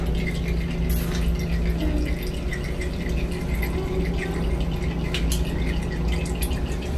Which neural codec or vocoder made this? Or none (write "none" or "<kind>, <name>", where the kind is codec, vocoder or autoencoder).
none